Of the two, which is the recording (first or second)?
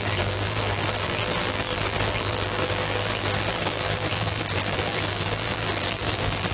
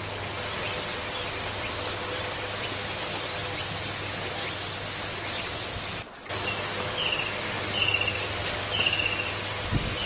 second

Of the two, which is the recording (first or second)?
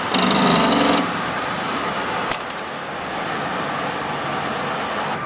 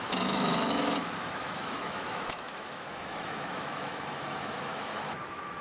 first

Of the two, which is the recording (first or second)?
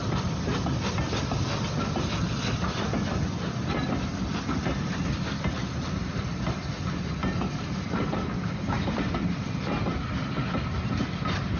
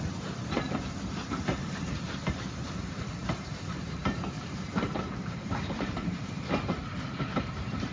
first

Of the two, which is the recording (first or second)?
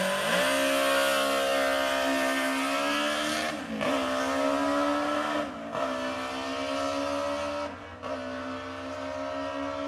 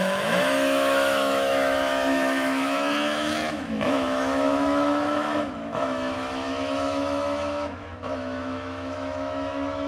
first